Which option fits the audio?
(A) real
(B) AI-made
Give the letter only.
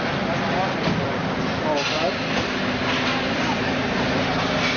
A